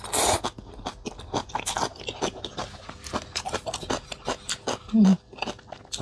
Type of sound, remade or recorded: recorded